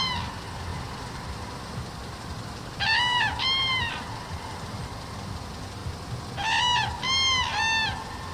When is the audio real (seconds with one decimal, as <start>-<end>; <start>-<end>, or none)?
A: 5.8-8.3